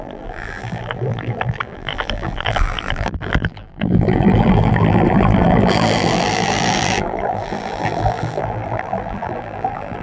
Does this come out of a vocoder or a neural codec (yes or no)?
yes